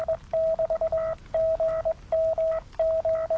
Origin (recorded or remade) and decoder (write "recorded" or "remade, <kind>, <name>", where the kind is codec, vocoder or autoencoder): recorded